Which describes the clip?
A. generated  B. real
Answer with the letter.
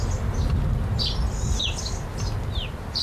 B